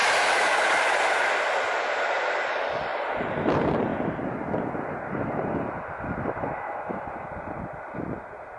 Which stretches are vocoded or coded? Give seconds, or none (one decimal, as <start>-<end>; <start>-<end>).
0.0-0.8; 2.9-3.5